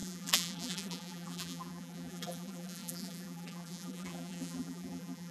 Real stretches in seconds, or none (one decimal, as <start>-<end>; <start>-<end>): none